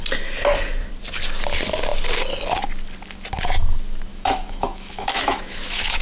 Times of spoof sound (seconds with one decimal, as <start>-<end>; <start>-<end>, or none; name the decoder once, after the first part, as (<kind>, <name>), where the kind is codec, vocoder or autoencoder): 4.1-6.0 (autoencoder, DAC-VAE)